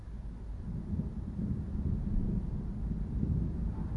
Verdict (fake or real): real